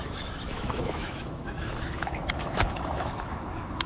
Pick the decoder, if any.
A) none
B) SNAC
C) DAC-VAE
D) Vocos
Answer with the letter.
C